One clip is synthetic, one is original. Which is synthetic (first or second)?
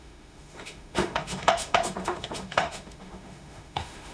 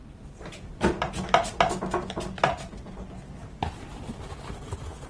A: first